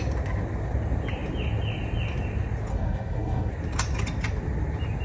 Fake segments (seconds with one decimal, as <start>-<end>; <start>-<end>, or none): 2.7-3.5